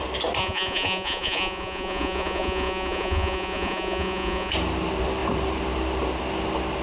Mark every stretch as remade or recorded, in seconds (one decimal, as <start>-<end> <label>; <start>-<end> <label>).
0.0-0.4 recorded; 0.4-4.5 remade; 4.5-6.8 recorded